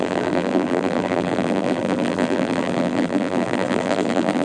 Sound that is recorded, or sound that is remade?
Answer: remade